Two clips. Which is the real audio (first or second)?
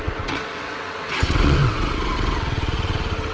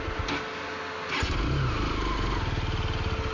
second